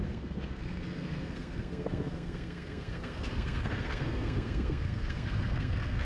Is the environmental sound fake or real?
fake